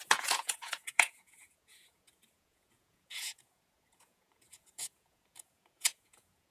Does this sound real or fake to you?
fake